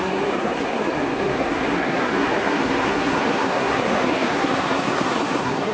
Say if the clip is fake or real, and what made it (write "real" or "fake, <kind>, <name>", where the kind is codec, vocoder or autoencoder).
fake, codec, SNAC